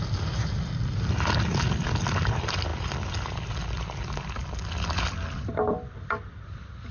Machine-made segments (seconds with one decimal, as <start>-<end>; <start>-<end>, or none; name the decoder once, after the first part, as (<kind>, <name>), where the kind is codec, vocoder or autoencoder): none